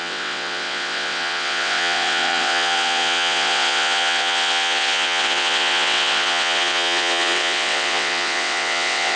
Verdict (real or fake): fake